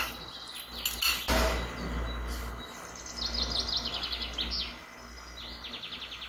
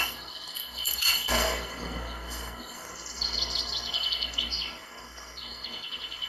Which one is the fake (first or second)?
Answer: second